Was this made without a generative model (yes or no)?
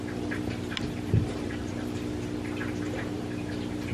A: no